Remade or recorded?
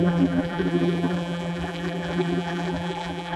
remade